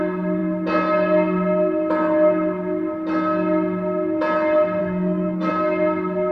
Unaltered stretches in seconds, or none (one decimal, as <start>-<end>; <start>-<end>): 0.0-4.8; 5.5-6.3

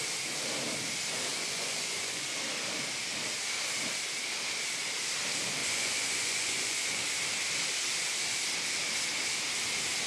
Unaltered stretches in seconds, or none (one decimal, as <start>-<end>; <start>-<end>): 0.0-1.3; 2.4-5.6; 7.0-10.1

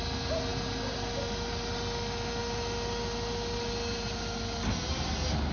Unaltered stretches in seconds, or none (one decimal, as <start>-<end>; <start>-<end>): 0.0-5.5

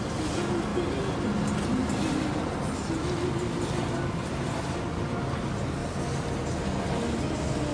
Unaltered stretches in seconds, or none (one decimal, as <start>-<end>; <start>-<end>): 0.0-7.7

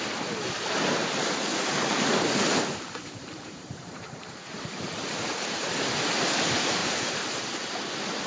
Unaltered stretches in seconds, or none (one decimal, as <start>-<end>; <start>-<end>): 0.0-1.5; 5.8-6.8; 7.7-8.3

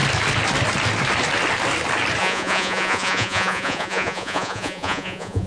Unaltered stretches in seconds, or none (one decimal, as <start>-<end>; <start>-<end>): 0.0-2.2

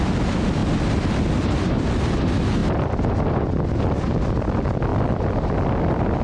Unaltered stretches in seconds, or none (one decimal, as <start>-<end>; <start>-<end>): 0.0-6.2

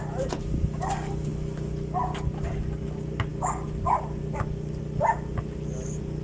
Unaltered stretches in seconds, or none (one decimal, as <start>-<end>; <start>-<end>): 0.0-6.2